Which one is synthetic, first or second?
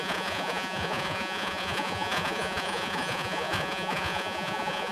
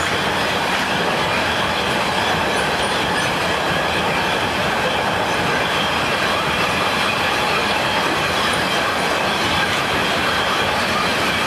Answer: first